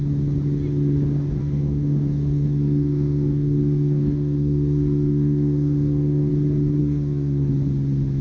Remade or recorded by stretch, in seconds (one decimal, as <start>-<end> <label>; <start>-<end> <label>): 0.0-1.4 recorded; 1.4-6.3 remade; 6.3-6.8 recorded; 6.8-7.5 remade; 7.5-8.2 recorded